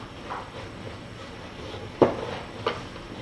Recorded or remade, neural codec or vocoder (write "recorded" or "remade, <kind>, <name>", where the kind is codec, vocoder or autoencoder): recorded